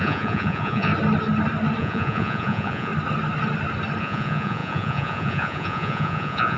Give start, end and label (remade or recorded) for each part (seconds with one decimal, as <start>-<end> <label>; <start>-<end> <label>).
0.0-0.9 remade; 0.9-1.8 recorded; 1.8-2.9 remade; 2.9-4.0 recorded; 4.0-6.6 remade